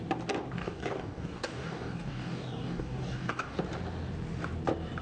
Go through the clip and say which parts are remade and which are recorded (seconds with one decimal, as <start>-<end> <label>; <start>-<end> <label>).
0.0-0.6 recorded; 0.6-3.6 remade; 3.6-5.0 recorded